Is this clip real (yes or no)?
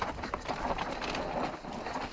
yes